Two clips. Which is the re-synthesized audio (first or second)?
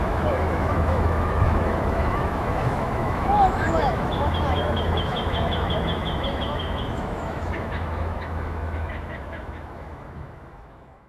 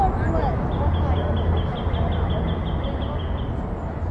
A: first